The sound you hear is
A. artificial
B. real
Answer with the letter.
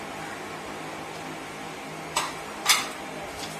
B